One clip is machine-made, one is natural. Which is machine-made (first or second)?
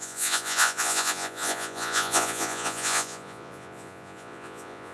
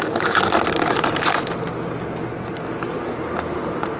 first